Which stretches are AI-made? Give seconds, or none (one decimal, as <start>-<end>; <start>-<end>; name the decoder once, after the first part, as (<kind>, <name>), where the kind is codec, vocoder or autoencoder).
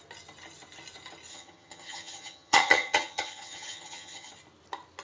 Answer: 1.3-4.3 (vocoder, HiFi-GAN)